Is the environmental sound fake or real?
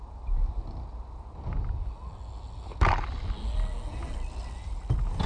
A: real